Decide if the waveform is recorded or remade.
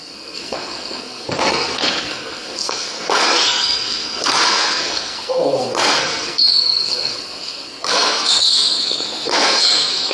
remade